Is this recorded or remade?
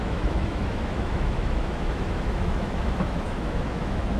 remade